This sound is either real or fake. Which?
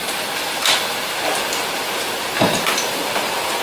real